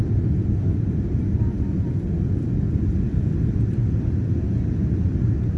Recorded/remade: recorded